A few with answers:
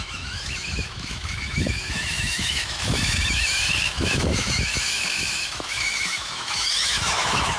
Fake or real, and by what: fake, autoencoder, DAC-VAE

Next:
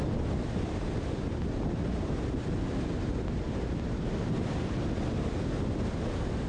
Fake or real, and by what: real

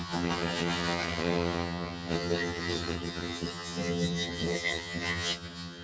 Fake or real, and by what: fake, vocoder, HiFi-GAN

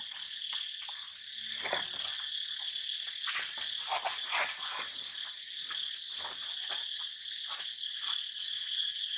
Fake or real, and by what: real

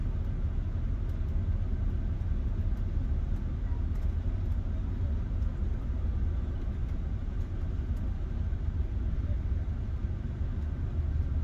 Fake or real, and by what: real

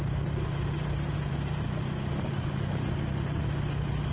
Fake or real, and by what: real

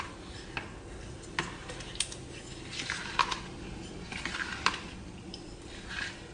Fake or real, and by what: real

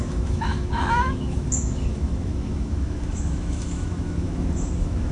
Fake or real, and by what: fake, autoencoder, DAC-VAE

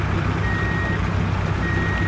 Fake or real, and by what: real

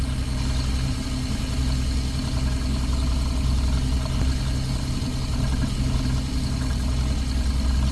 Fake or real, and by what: real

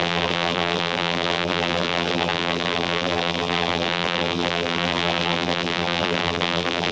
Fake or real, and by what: fake, vocoder, BigVGAN v2